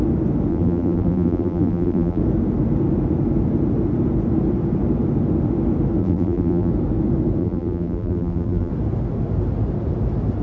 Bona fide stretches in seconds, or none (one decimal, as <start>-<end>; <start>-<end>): 0.0-0.5; 2.2-6.0; 6.7-7.4; 8.7-10.4